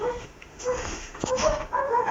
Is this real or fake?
fake